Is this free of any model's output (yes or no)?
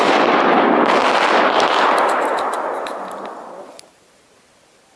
yes